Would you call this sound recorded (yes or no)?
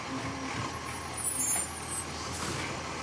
yes